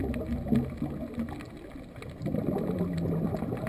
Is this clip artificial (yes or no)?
no